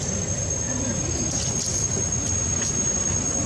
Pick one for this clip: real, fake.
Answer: real